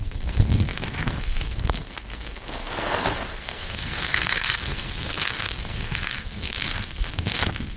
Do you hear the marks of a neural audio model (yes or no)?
yes